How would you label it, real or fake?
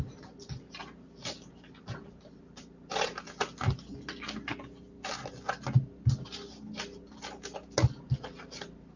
real